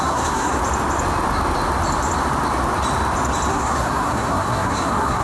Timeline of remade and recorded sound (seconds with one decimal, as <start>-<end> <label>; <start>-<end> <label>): 0.0-0.6 remade; 0.6-3.5 recorded; 3.5-5.2 remade